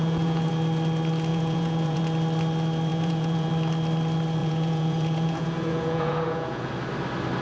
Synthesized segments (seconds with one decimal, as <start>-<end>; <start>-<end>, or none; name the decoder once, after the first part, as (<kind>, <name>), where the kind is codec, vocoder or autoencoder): 0.0-0.5 (vocoder, Vocos); 1.3-2.0; 2.9-3.5; 4.4-6.7